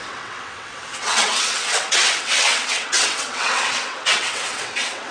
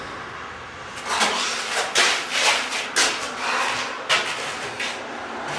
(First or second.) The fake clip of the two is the first